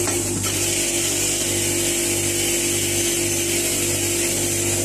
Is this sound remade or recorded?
recorded